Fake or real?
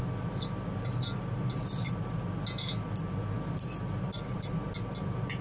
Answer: real